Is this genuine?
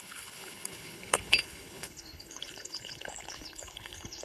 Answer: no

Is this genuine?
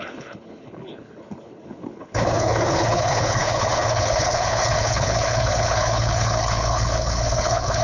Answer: no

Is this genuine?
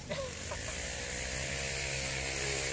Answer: yes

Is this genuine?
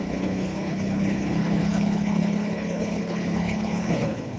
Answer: no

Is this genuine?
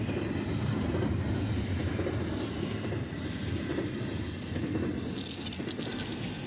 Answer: yes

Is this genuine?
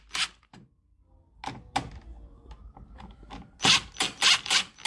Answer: yes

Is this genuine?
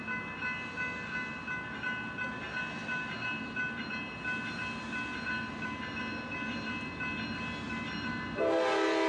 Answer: yes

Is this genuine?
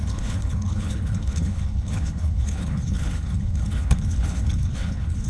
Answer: no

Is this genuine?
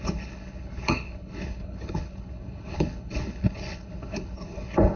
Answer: no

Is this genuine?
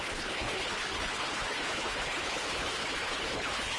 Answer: no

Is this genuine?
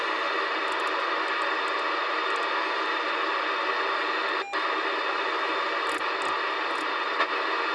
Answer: yes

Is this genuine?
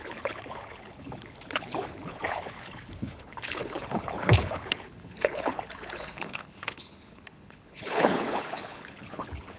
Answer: no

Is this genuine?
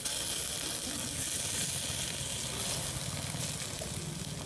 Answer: yes